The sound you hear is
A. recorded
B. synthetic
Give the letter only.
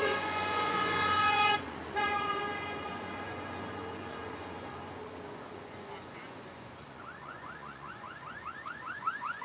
B